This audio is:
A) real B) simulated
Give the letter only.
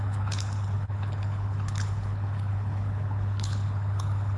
B